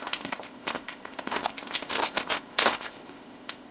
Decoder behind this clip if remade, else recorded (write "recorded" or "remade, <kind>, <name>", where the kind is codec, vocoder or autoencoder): remade, codec, ZipCodec